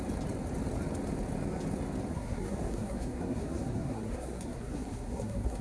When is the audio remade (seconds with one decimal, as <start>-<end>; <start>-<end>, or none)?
2.1-5.6